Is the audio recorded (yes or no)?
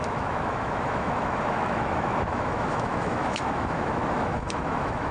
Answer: no